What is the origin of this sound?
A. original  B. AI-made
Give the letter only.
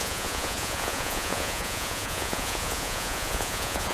B